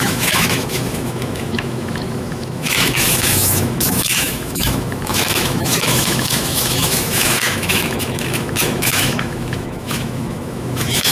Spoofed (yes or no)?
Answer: yes